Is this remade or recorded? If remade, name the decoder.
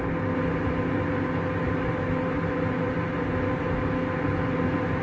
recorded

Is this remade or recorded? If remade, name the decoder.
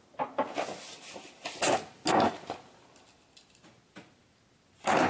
recorded